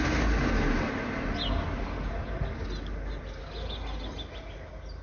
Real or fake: real